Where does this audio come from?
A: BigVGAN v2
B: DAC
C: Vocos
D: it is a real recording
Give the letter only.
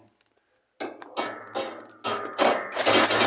D